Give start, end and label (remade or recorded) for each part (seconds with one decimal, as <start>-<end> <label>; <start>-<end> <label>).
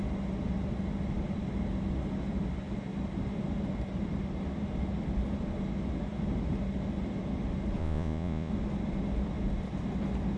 0.0-7.8 recorded; 7.8-8.5 remade; 8.5-10.4 recorded